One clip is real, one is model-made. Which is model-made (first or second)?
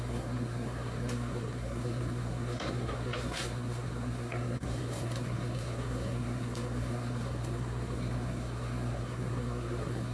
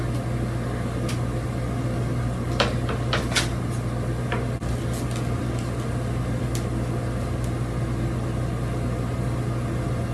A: first